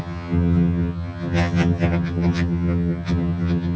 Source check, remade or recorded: remade